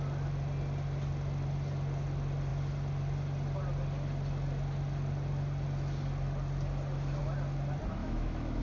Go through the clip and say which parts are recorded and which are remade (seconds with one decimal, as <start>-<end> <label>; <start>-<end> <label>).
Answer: 0.0-8.0 recorded; 8.0-8.6 remade